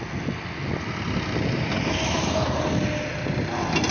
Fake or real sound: real